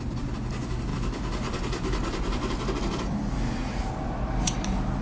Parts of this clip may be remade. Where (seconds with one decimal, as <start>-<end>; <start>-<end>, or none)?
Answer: none